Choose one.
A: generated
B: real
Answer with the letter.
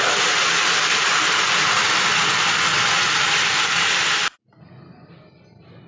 B